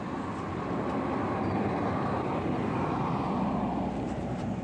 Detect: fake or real real